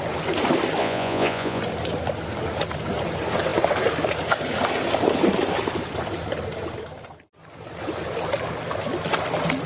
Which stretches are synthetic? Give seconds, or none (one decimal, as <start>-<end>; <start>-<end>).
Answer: 0.8-1.6